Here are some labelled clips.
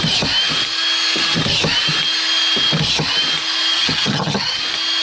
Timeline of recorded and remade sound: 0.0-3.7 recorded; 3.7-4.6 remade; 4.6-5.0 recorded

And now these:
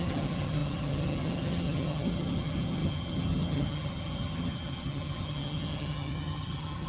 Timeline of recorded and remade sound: 0.0-6.9 remade

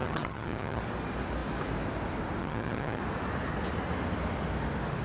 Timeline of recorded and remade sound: 0.0-0.8 remade; 0.8-2.4 recorded; 2.4-3.0 remade; 3.0-5.0 recorded

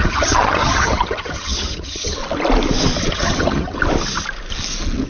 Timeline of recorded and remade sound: 0.0-2.2 remade; 2.2-3.1 recorded; 3.1-3.8 remade; 3.8-5.1 recorded

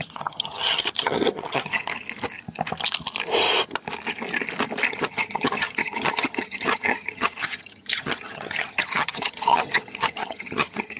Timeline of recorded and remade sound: 0.0-1.9 remade; 1.9-4.9 recorded; 4.9-11.0 remade

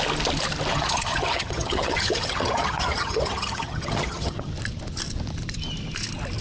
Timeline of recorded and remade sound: 0.0-0.7 recorded; 0.7-4.5 remade; 4.5-6.4 recorded

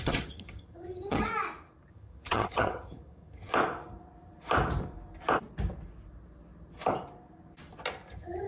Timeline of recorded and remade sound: 0.0-1.3 remade; 1.3-1.9 recorded; 1.9-3.5 remade; 3.5-8.1 recorded; 8.1-8.5 remade

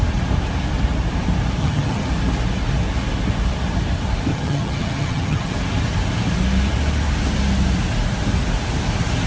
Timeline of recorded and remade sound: 0.0-1.6 recorded; 1.6-2.1 remade; 2.1-4.3 recorded; 4.3-5.5 remade; 5.5-9.3 recorded